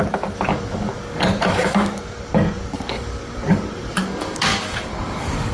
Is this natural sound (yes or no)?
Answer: no